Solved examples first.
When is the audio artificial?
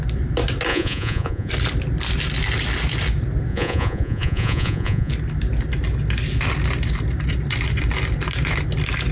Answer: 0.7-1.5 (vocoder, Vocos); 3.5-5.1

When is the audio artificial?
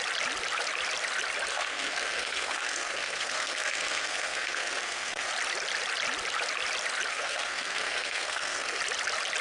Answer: 1.5-5.3 (codec, SNAC); 7.1-8.8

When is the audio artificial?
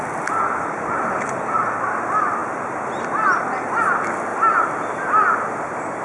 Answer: none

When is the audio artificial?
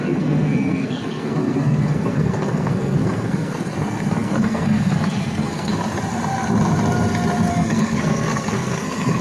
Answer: 0.0-5.7 (codec, SNAC); 7.5-9.2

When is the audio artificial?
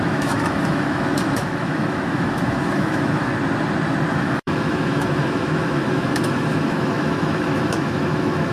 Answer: 0.0-3.3 (autoencoder, DAC-VAE); 4.1-8.5